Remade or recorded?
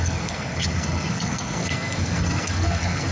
remade